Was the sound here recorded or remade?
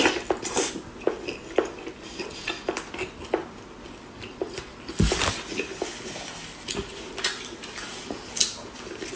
recorded